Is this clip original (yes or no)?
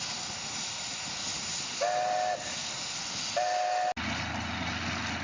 yes